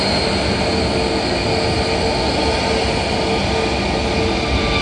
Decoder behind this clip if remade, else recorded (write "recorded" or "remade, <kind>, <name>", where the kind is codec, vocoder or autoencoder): recorded